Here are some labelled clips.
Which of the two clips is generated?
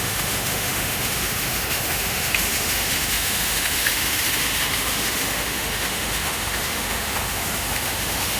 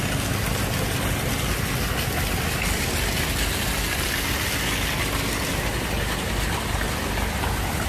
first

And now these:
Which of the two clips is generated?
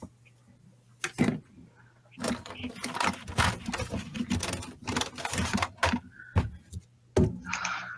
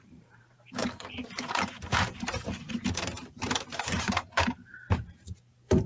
second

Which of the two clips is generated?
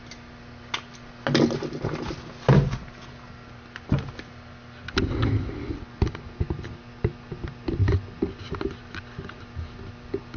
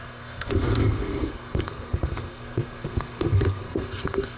second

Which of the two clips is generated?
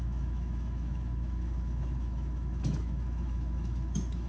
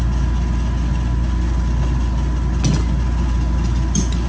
first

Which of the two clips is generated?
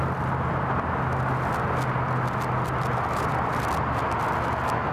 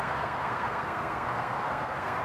second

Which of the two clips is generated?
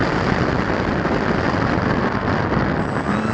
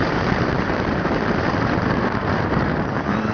second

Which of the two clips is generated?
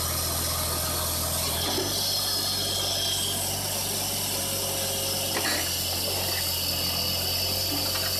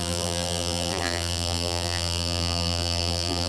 second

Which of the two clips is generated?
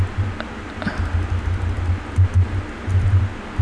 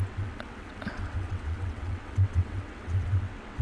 second